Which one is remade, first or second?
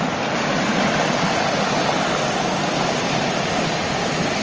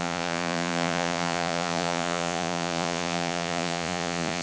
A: second